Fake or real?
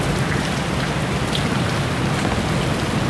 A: real